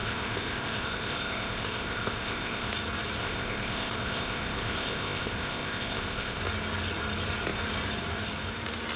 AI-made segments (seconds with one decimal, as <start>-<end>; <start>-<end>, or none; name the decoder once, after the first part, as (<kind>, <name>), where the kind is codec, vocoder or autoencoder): 0.0-2.7 (codec, ZipCodec); 3.2-6.4